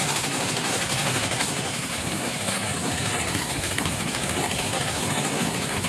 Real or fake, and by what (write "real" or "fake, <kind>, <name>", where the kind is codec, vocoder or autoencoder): fake, codec, SNAC